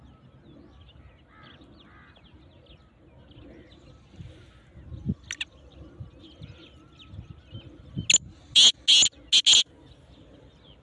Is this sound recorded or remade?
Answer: recorded